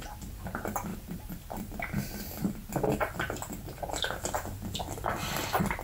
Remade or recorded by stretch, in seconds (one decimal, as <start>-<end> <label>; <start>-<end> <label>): 0.0-0.9 recorded; 0.9-2.7 remade; 2.7-5.8 recorded